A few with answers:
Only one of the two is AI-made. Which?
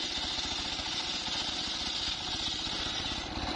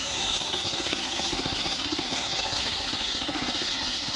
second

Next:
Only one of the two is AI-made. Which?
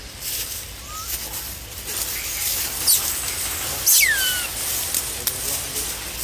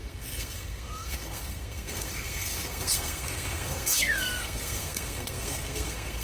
second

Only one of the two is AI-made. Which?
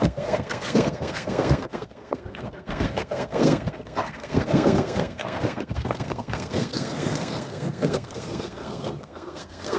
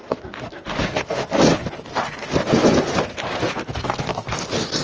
first